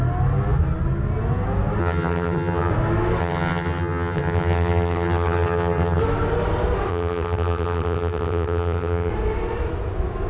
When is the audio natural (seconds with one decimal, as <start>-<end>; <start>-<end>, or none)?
0.0-1.8; 2.7-3.2; 6.0-6.9; 9.1-10.3